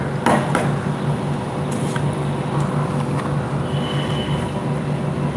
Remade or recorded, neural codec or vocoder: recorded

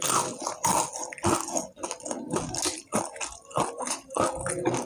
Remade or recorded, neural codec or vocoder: recorded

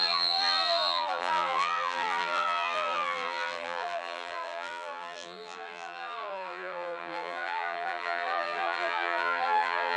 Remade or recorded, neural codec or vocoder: remade, vocoder, BigVGAN v2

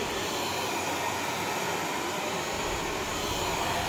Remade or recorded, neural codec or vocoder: remade, vocoder, BigVGAN v2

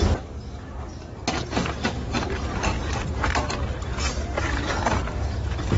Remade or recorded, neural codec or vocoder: recorded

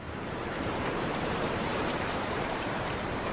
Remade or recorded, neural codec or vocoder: remade, vocoder, BigVGAN v2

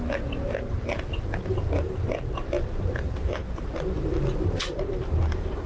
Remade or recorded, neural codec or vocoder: remade, vocoder, BigVGAN v2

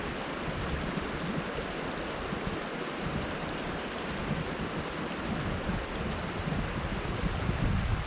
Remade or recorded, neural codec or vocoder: recorded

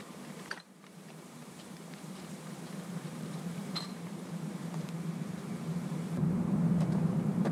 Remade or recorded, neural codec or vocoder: remade, vocoder, BigVGAN v2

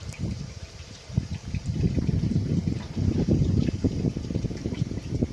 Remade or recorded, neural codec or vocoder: remade, vocoder, BigVGAN v2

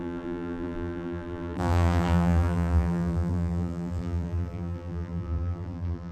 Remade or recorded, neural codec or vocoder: remade, vocoder, BigVGAN v2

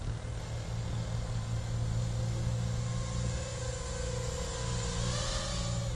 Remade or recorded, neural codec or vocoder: recorded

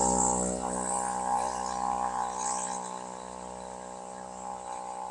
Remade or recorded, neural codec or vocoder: recorded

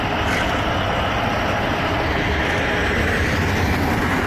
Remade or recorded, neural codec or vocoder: recorded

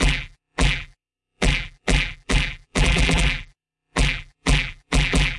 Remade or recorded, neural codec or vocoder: remade, vocoder, BigVGAN v2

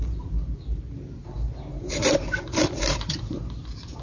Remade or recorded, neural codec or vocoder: remade, vocoder, BigVGAN v2